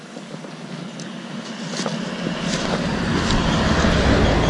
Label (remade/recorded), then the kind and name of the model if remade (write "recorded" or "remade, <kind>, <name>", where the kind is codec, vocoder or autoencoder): recorded